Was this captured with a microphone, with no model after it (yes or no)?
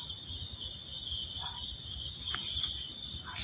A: yes